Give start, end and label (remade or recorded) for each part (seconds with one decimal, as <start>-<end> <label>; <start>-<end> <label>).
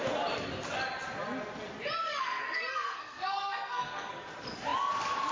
0.0-2.0 recorded; 2.0-4.1 remade; 4.1-5.3 recorded